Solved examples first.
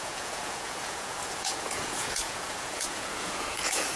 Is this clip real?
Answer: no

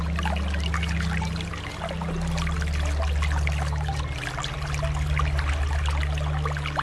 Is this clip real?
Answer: yes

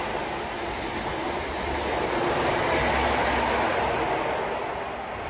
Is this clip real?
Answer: yes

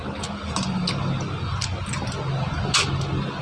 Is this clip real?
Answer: yes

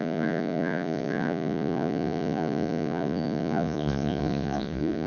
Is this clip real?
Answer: no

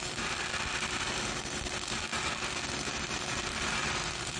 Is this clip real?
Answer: yes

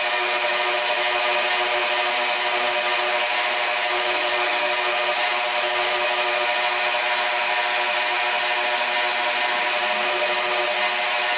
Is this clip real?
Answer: yes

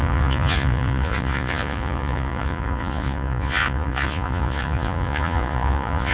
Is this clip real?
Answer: no